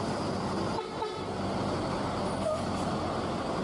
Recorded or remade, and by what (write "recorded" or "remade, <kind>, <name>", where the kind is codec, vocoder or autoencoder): recorded